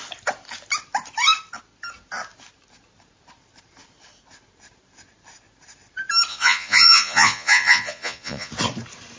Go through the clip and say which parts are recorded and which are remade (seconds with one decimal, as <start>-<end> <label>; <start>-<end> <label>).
0.0-6.3 recorded; 6.3-8.5 remade; 8.5-9.2 recorded